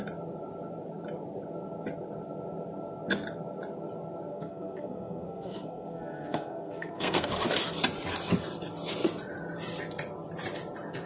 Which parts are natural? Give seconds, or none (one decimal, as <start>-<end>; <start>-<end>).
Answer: 0.0-4.3; 7.3-11.1